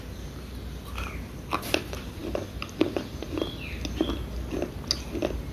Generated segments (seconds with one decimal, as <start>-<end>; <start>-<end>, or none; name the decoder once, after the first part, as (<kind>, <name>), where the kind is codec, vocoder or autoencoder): none